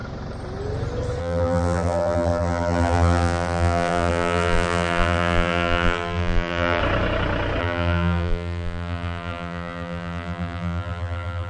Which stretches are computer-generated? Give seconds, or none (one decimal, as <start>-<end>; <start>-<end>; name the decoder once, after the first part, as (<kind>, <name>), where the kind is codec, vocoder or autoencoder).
1.2-6.8 (vocoder, BigVGAN v2); 7.6-11.5